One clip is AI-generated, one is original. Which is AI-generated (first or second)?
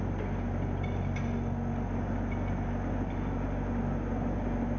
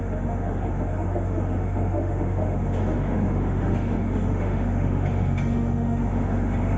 second